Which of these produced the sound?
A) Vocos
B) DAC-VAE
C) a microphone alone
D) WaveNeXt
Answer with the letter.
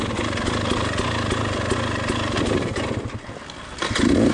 C